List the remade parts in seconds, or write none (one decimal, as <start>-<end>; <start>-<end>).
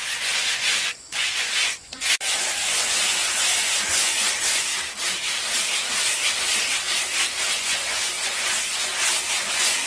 0.0-4.7; 7.3-8.9; 9.4-9.9